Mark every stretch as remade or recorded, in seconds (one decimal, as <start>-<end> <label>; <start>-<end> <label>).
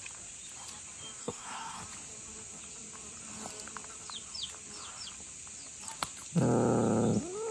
0.0-1.2 recorded; 1.2-1.8 remade; 1.8-7.5 recorded